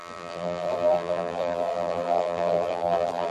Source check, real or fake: fake